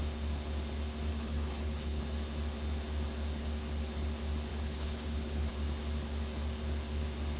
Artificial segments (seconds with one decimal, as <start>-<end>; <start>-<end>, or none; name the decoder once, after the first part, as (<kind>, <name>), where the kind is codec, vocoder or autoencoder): 1.1-2.0 (codec, HILCodec); 4.5-5.5